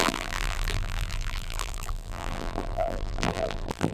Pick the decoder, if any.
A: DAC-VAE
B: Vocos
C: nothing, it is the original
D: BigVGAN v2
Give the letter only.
D